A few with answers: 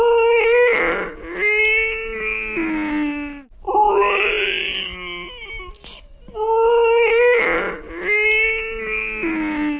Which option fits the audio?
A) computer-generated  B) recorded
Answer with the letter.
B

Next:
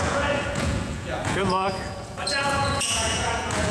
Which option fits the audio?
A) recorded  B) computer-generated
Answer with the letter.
B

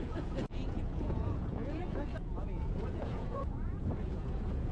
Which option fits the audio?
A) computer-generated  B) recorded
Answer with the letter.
A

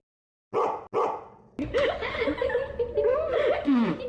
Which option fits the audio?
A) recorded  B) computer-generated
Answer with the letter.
A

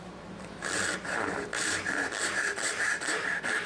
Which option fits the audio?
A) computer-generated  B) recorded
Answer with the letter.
A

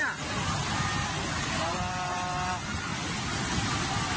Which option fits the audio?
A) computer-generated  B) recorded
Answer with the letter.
B